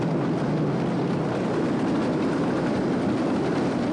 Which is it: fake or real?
real